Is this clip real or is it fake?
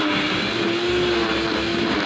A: real